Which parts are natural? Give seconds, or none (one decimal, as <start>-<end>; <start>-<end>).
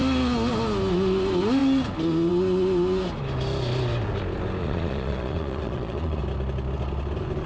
0.0-4.6; 6.2-7.5